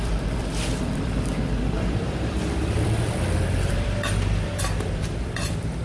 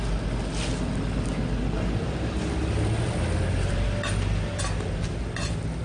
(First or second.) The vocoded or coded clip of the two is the first